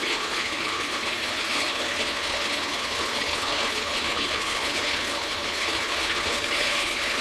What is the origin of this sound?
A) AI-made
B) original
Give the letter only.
A